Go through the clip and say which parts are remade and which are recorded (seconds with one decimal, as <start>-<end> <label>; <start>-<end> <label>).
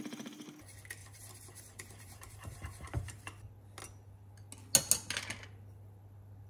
0.0-1.0 recorded; 1.0-3.2 remade; 3.2-6.5 recorded